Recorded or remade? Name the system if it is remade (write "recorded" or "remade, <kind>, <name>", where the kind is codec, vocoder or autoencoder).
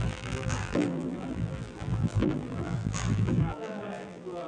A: remade, vocoder, BigVGAN v2